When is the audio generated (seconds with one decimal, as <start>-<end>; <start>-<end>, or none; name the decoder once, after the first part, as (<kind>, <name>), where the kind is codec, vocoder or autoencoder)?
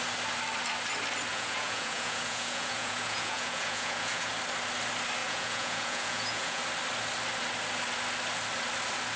1.3-4.3 (vocoder, Vocos); 5.2-6.6